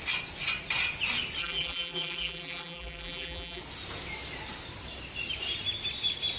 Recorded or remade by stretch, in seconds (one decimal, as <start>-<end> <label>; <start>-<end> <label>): 0.0-1.4 recorded; 1.4-3.6 remade; 3.6-6.4 recorded